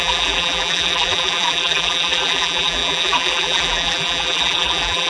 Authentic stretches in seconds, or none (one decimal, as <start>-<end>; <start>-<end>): none